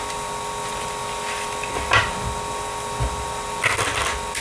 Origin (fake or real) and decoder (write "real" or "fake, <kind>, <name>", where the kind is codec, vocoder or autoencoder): real